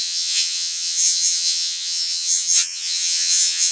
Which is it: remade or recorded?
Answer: remade